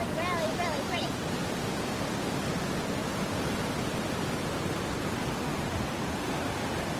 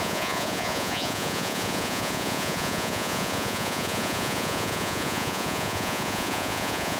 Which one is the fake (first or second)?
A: second